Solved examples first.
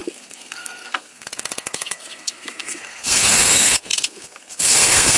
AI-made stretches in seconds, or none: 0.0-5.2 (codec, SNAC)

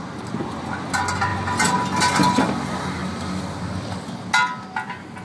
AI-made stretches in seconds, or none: none

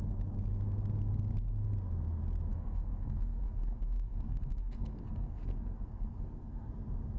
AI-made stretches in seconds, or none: 2.5-6.7 (codec, SNAC)

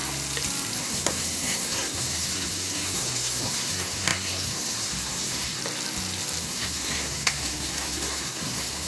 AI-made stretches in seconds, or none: 0.8-5.6 (codec, SNAC); 6.4-8.9

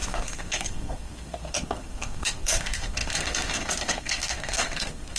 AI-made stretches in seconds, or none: 0.0-5.2 (codec, SNAC)

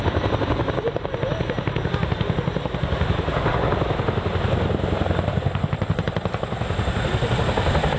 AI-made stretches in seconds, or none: none

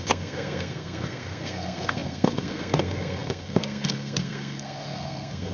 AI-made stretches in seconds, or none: 0.0-5.5 (codec, SNAC)

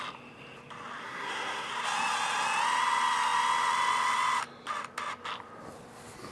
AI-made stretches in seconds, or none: 1.0-1.7 (codec, SNAC)